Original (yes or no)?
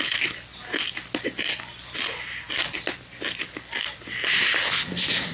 yes